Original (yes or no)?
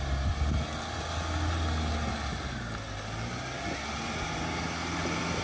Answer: yes